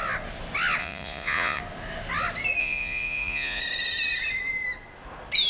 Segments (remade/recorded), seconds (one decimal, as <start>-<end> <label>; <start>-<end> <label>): 0.0-0.8 recorded; 0.8-1.6 remade; 1.6-2.6 recorded; 2.6-3.6 remade; 3.6-5.5 recorded